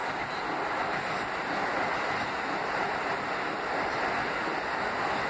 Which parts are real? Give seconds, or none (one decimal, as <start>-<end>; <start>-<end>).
0.0-5.3